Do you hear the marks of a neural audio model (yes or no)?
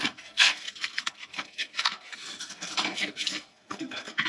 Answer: yes